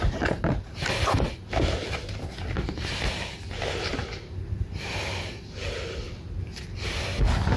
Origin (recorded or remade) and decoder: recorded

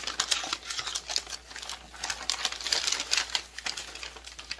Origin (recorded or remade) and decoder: recorded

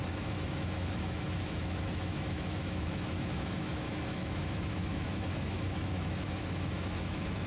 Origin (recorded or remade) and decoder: remade, autoencoder, DAC-VAE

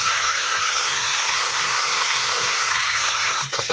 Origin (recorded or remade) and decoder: remade, codec, SNAC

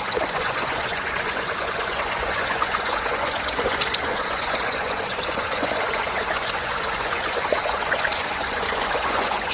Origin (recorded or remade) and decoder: remade, vocoder, Vocos